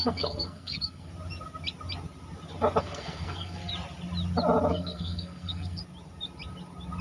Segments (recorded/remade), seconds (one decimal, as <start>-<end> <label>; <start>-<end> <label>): 0.0-1.1 remade; 1.1-2.8 recorded; 2.8-3.7 remade; 3.7-4.7 recorded; 4.7-5.8 remade; 5.8-7.0 recorded

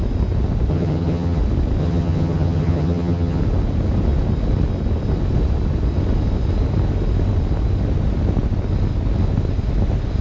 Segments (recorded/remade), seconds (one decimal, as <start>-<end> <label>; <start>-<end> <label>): 0.0-0.7 recorded; 0.7-1.4 remade; 1.4-1.8 recorded; 1.8-3.4 remade; 3.4-10.2 recorded

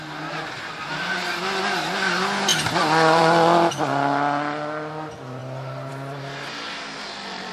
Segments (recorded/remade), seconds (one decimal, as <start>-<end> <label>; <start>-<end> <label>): 0.0-7.5 recorded

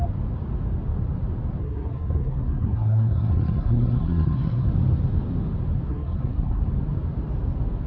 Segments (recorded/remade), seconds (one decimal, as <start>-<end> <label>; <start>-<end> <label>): 0.0-1.6 recorded; 1.6-4.7 remade; 4.7-5.9 recorded; 5.9-6.6 remade; 6.6-7.9 recorded